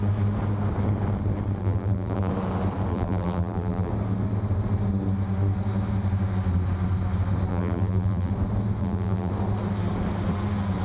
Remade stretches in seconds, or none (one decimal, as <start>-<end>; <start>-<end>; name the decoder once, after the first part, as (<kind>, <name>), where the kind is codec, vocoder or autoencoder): 1.6-2.3 (vocoder, BigVGAN v2); 2.9-3.9; 7.5-8.3; 8.8-9.3

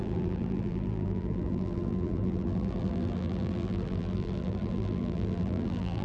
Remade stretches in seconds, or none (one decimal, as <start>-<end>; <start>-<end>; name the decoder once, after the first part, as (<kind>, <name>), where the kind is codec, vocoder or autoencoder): 0.0-6.0 (vocoder, BigVGAN v2)

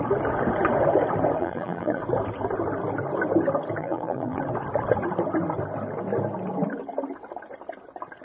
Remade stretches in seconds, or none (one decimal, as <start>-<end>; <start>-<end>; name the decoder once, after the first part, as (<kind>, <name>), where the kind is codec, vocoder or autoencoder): 1.4-2.0 (vocoder, BigVGAN v2); 3.8-4.4

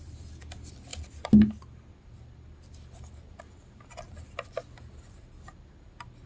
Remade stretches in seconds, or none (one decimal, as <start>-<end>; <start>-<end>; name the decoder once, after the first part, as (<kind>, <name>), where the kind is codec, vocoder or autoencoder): 0.0-0.9 (vocoder, BigVGAN v2); 2.0-6.3

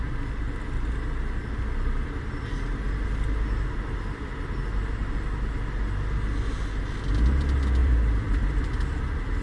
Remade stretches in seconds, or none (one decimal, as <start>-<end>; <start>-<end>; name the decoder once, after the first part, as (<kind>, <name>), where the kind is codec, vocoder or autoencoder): 7.8-9.0 (vocoder, BigVGAN v2)

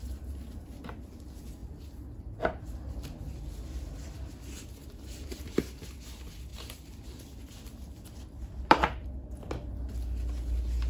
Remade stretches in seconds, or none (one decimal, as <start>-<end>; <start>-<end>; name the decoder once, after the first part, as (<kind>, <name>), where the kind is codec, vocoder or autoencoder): 1.6-3.6 (vocoder, BigVGAN v2); 4.8-5.6; 6.5-9.1

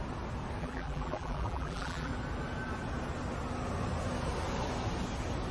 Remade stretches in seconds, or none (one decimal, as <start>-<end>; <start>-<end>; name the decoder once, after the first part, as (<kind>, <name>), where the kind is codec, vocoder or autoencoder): 0.6-2.1 (vocoder, BigVGAN v2)

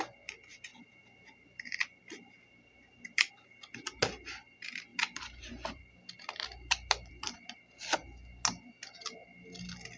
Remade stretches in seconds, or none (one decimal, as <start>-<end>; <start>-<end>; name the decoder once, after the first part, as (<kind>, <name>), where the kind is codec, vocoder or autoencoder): 0.7-3.3 (vocoder, BigVGAN v2); 4.9-7.1